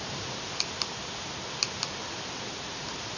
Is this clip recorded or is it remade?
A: recorded